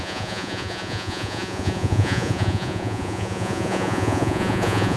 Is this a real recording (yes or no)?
no